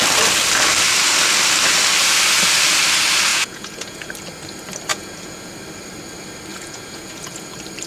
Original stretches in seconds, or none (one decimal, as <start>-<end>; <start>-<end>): 0.0-3.3; 4.1-4.9; 5.5-6.5; 7.5-7.9